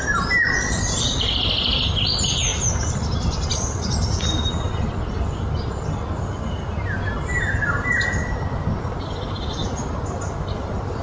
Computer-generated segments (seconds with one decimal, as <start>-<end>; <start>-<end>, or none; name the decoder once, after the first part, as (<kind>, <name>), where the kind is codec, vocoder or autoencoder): none